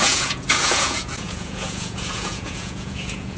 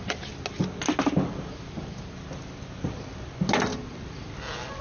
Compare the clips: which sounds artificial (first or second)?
first